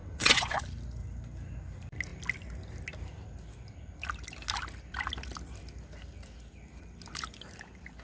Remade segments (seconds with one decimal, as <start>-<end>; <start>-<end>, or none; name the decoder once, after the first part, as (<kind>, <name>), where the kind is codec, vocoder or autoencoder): 0.0-0.6 (vocoder, WaveNeXt)